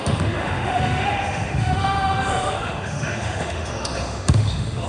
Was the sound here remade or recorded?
remade